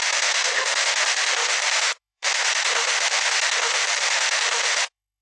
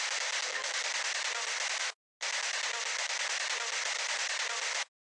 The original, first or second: second